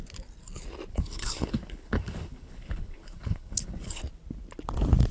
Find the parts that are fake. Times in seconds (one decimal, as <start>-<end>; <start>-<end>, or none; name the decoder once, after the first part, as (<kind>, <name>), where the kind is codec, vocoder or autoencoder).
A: 0.9-4.0 (codec, HILCodec)